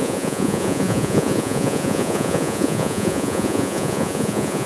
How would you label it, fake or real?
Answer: fake